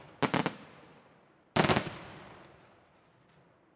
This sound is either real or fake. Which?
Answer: real